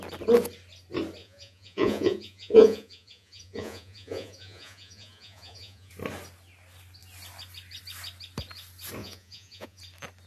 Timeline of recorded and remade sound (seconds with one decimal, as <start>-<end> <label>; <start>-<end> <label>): 0.0-1.2 recorded; 1.2-5.9 remade; 5.9-9.0 recorded; 9.0-9.8 remade; 9.8-10.3 recorded

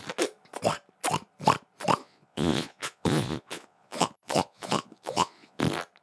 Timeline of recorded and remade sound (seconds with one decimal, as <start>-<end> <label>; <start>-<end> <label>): 0.0-2.0 recorded; 2.0-5.6 remade; 5.6-6.0 recorded

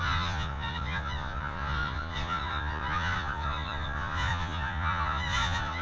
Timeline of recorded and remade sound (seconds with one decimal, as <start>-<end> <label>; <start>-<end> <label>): 0.0-5.8 remade

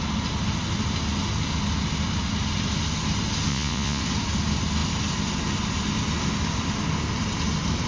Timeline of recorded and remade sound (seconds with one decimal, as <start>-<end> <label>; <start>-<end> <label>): 0.0-3.5 recorded; 3.5-4.0 remade; 4.0-7.9 recorded

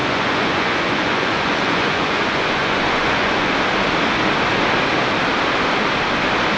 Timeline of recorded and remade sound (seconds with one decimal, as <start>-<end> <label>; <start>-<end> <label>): 0.0-3.5 remade; 3.5-6.6 recorded

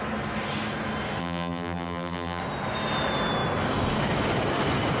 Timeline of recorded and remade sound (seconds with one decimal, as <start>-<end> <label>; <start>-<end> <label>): 0.0-1.2 recorded; 1.2-2.4 remade; 2.4-5.0 recorded

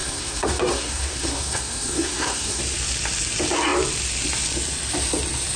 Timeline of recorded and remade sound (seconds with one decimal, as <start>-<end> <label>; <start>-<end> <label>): 0.0-2.6 remade; 2.6-5.6 recorded

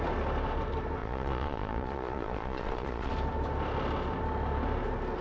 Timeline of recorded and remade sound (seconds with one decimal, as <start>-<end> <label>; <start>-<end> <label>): 0.0-1.0 recorded; 1.0-3.1 remade; 3.1-5.2 recorded